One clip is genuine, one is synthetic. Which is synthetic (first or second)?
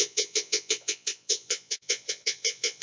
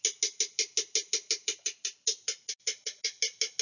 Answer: first